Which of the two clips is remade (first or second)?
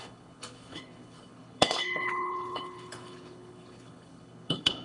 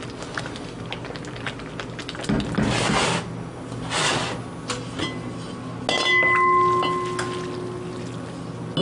first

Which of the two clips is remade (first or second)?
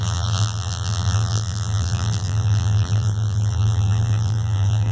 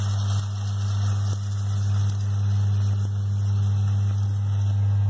first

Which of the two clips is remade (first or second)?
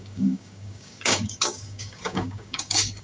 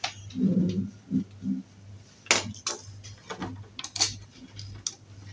first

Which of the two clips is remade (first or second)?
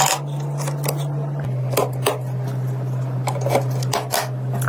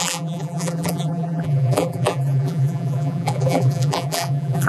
second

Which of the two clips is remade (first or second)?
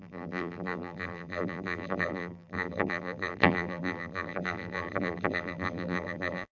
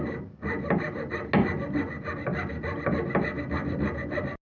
first